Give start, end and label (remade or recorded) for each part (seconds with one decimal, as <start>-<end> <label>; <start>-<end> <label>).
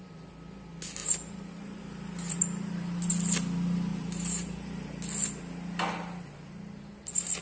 0.0-1.0 recorded; 1.0-2.4 remade; 2.4-3.9 recorded; 3.9-4.9 remade; 4.9-7.4 recorded